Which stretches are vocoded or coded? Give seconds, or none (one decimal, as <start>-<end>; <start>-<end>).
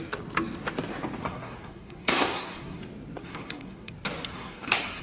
1.2-2.8; 3.2-3.9; 4.3-5.0